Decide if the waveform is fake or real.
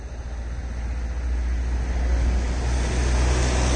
real